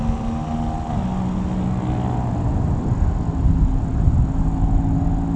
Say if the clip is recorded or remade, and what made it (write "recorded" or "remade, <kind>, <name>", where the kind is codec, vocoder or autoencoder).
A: recorded